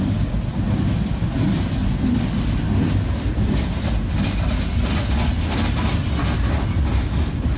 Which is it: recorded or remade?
recorded